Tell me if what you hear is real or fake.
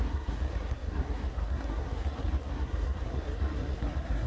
fake